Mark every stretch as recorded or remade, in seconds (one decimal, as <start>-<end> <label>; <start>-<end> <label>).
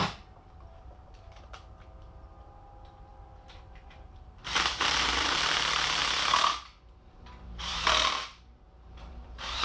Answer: 0.0-6.0 remade; 6.0-7.5 recorded; 7.5-9.6 remade